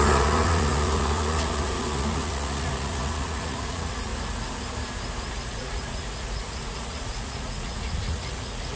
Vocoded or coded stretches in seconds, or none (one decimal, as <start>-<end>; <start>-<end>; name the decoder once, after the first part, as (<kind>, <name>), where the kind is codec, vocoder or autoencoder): 0.0-4.1 (vocoder, Vocos); 5.3-8.8